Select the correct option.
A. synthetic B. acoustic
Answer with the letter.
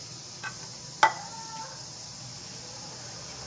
B